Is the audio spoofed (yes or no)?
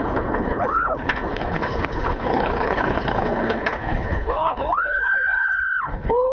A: yes